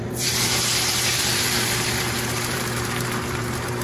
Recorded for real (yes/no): no